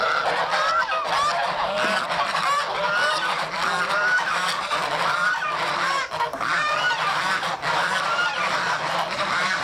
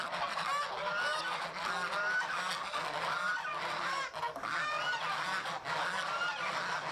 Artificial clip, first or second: first